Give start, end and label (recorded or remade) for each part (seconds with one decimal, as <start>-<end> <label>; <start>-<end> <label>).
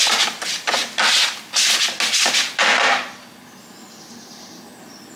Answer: 0.0-5.2 recorded